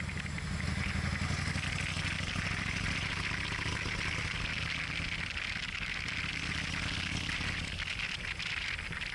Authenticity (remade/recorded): recorded